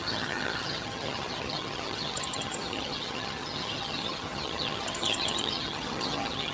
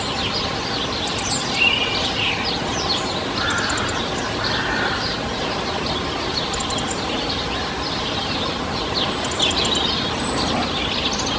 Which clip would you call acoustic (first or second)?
second